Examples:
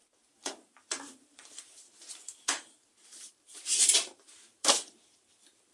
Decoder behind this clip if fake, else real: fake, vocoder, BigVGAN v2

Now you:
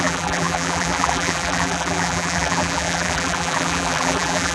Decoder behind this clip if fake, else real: fake, vocoder, BigVGAN v2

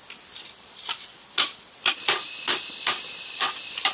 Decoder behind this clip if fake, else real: fake, vocoder, BigVGAN v2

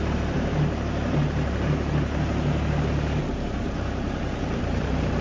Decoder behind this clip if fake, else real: fake, vocoder, BigVGAN v2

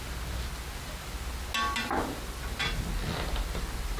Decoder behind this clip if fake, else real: real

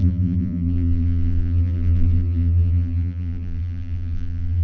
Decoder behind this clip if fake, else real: fake, vocoder, BigVGAN v2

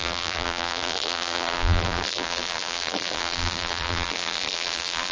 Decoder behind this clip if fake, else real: fake, vocoder, BigVGAN v2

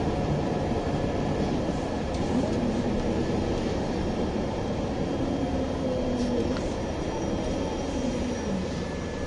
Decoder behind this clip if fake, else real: fake, vocoder, BigVGAN v2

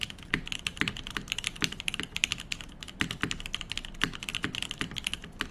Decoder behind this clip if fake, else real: real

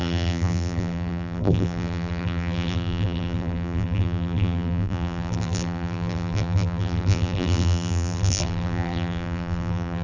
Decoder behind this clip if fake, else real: fake, vocoder, BigVGAN v2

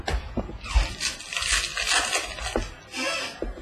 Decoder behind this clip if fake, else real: real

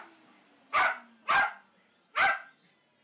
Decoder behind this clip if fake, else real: real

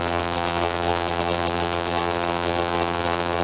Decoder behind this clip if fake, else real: fake, vocoder, BigVGAN v2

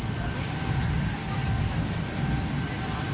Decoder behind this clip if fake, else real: fake, vocoder, BigVGAN v2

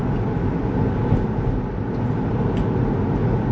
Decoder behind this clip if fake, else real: real